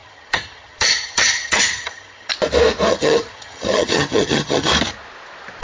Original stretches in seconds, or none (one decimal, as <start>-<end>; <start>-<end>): 2.3-2.9; 4.7-5.6